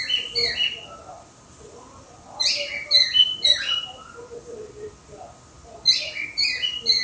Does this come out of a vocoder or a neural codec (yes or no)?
yes